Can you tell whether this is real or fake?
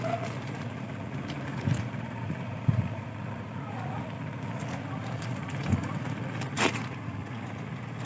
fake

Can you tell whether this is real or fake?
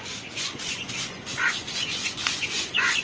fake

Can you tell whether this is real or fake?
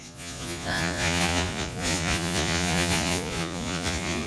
fake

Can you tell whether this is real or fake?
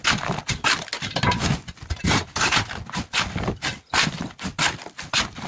real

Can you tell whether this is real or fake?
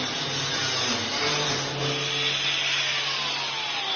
real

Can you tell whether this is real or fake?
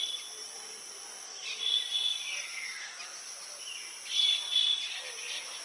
real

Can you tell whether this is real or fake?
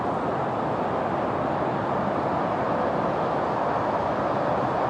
real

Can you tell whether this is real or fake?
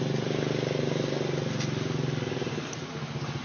real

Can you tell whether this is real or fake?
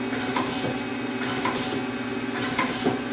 real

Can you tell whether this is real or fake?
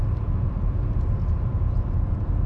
real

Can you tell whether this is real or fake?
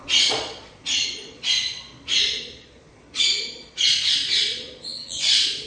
fake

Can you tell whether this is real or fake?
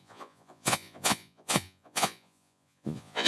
fake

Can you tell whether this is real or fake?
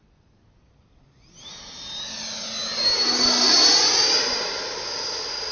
real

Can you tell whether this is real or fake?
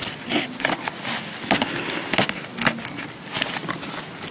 real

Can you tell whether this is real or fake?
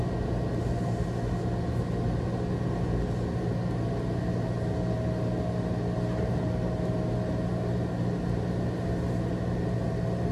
real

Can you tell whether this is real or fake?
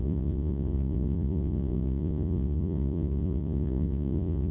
fake